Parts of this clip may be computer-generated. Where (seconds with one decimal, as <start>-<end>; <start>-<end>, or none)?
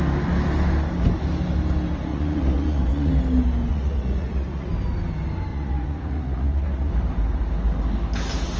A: 2.1-3.1; 3.7-4.7; 5.5-6.9